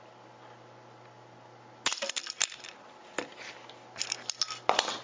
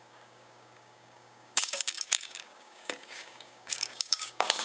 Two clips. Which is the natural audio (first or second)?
first